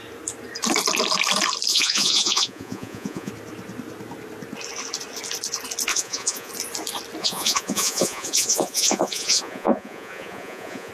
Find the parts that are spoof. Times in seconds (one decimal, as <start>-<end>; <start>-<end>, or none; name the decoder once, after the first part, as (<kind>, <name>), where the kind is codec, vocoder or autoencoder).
1.7-3.3 (vocoder, Vocos); 5.9-6.5; 7.2-10.9